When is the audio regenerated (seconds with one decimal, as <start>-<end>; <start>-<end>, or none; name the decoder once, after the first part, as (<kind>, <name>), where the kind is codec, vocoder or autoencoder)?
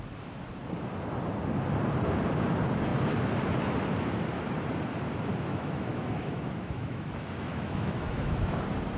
5.5-8.6 (autoencoder, DAC-VAE)